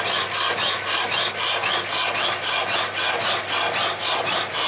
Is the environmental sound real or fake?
real